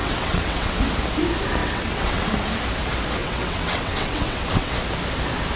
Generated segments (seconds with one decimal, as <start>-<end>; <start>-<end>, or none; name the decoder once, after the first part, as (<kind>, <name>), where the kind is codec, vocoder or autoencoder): 0.0-0.8 (vocoder, WaveNeXt); 1.6-2.3; 3.2-4.7